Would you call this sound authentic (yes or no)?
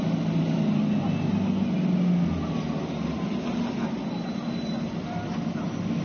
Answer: yes